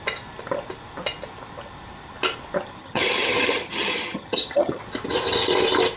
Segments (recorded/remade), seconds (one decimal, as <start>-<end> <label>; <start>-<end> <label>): 0.0-2.8 recorded; 2.8-4.8 remade; 4.8-6.0 recorded